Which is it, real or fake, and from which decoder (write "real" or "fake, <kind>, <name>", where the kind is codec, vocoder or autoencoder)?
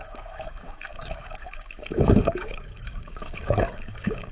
fake, codec, DAC